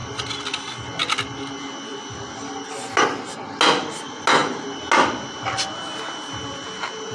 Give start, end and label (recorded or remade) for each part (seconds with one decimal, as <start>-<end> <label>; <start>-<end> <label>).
0.0-0.5 remade; 0.5-1.0 recorded; 1.0-1.5 remade; 1.5-7.1 recorded